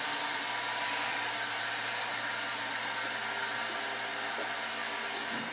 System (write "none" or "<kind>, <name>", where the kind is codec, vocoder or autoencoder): none